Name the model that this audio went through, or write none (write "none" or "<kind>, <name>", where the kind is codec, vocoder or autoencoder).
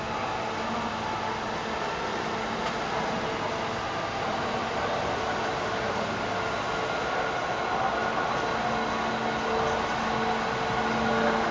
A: none